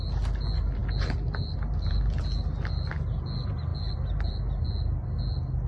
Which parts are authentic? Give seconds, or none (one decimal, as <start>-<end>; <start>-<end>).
0.0-5.7